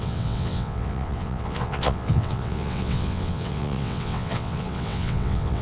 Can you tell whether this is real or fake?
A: fake